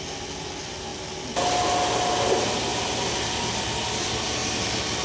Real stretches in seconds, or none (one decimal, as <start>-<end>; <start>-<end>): 0.0-5.0